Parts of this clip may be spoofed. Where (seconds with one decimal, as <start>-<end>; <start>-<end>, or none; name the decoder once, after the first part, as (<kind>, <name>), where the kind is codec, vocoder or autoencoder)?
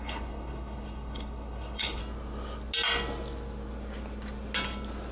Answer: 0.0-2.0 (codec, HILCodec)